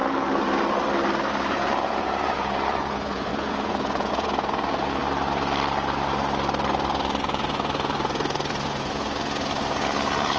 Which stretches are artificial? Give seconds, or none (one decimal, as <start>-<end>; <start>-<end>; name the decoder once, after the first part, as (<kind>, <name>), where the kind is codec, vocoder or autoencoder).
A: 1.5-5.0 (vocoder, Vocos); 7.2-10.4